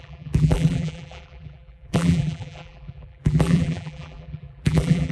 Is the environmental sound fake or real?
fake